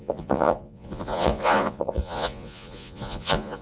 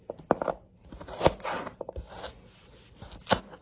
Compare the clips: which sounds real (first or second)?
second